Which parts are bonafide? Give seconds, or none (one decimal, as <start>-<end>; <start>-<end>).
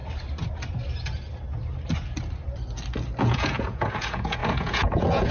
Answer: 0.0-3.2